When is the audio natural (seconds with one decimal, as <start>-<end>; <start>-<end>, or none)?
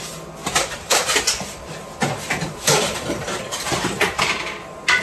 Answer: 0.0-0.4; 3.4-5.0